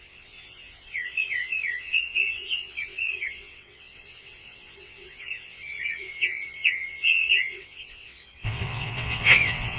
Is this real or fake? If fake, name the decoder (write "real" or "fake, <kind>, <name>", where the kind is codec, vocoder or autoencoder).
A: fake, vocoder, WaveNeXt